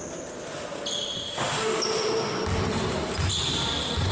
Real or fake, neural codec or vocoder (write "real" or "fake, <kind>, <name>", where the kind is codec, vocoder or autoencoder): real